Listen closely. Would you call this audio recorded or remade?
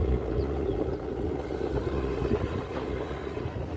remade